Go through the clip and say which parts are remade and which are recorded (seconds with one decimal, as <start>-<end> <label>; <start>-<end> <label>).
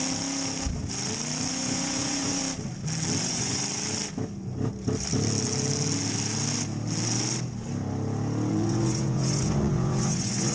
0.0-1.5 recorded; 1.5-2.4 remade; 2.4-3.2 recorded; 3.2-3.6 remade; 3.6-8.5 recorded; 8.5-10.5 remade